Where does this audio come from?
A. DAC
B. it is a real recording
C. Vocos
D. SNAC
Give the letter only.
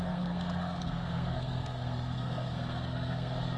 D